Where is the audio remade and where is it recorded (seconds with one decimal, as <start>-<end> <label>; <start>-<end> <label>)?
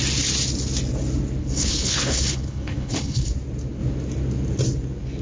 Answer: 0.0-1.4 recorded; 1.4-3.3 remade; 3.3-5.2 recorded